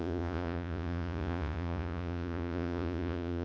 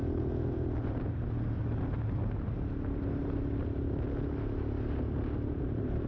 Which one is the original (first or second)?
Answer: second